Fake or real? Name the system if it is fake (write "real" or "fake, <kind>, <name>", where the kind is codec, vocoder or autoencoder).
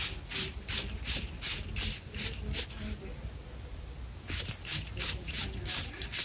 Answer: real